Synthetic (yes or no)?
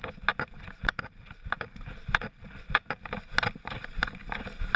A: no